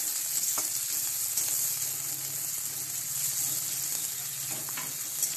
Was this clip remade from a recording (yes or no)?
no